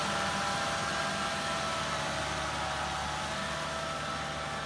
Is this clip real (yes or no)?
yes